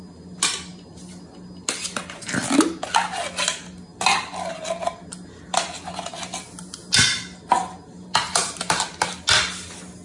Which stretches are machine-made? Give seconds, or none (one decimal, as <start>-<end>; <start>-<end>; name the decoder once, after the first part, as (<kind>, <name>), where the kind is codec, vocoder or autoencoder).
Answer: none